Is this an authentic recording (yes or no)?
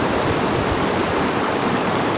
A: yes